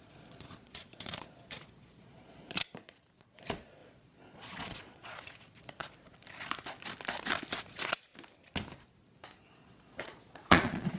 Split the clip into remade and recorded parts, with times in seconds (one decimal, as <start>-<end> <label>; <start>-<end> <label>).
0.0-5.8 remade; 5.8-7.5 recorded; 7.5-8.1 remade; 8.1-9.4 recorded; 9.4-11.0 remade